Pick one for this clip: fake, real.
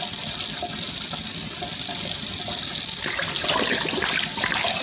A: real